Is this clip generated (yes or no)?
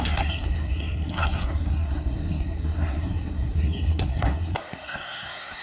yes